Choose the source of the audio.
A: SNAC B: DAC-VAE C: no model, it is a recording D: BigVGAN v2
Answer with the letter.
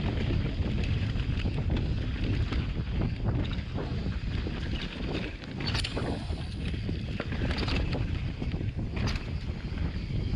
C